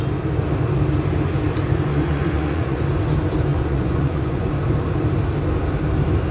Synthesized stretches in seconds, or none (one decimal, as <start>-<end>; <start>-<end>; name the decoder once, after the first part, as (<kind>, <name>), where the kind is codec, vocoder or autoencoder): 1.9-2.8 (vocoder, Vocos); 3.5-4.5